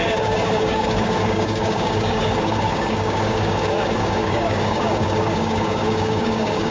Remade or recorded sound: remade